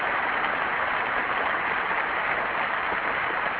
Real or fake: real